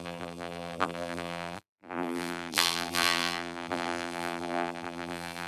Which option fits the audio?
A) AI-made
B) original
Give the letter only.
A